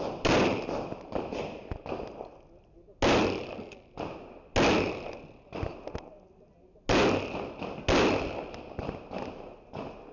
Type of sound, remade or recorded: recorded